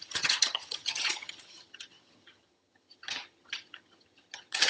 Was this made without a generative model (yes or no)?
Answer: no